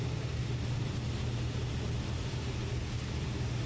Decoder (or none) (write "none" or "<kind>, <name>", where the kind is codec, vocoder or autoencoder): none